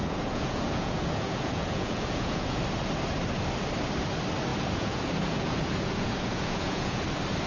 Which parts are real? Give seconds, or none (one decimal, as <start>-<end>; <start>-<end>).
2.6-4.5; 7.0-7.5